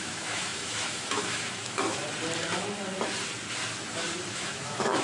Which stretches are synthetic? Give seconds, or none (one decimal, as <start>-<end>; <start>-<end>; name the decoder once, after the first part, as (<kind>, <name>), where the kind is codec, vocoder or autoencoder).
0.0-2.0 (autoencoder, DAC-VAE); 4.3-5.0